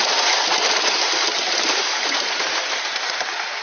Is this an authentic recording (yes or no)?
yes